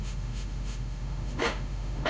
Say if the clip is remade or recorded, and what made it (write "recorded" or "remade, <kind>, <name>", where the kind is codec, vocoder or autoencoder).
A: remade, autoencoder, DAC-VAE